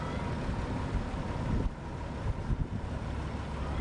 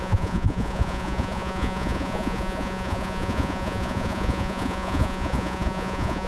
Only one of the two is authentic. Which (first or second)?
first